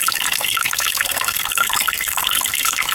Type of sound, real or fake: fake